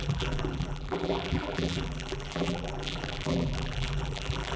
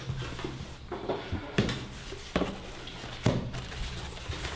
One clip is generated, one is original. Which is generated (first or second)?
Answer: first